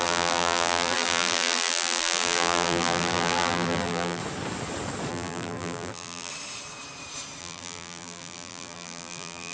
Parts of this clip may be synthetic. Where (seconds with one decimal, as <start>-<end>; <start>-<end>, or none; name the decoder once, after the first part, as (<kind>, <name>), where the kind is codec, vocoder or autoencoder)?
0.0-4.2 (vocoder, BigVGAN v2); 5.1-6.3; 7.4-9.5